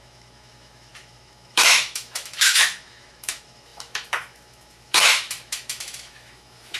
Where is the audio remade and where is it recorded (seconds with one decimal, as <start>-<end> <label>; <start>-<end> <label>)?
0.0-6.8 remade